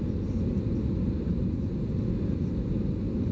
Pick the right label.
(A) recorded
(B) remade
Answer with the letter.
A